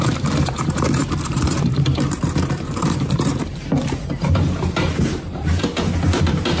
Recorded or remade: remade